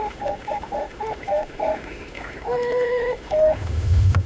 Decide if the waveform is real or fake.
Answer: fake